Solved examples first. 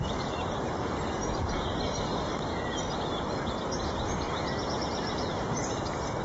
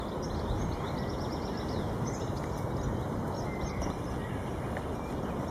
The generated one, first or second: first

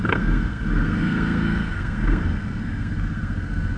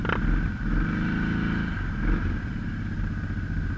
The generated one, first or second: first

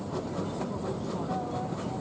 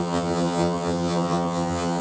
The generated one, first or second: second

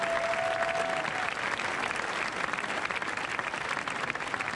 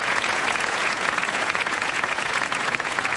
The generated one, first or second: second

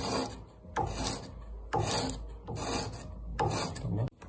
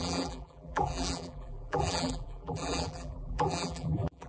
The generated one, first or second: second